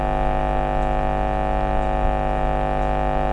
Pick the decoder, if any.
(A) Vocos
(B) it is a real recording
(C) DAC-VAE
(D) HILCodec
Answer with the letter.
B